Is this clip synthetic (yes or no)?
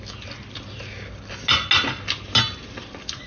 no